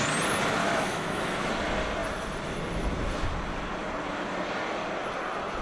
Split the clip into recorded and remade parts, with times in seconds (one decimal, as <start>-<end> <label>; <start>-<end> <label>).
0.0-0.6 recorded; 0.6-1.5 remade; 1.5-5.6 recorded